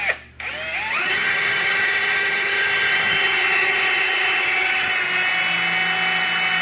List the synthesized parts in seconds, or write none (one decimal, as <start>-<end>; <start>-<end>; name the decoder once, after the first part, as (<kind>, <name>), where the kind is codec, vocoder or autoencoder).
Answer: 0.9-4.9 (vocoder, HiFi-GAN)